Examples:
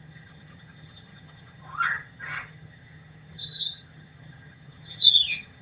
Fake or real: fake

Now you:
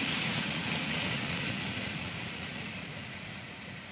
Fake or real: fake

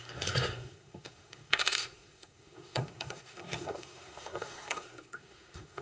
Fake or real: fake